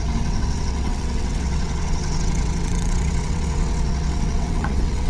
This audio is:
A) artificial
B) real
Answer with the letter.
A